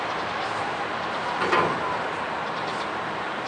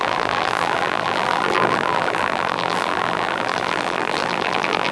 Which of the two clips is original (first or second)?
first